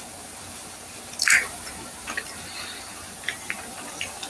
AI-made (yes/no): yes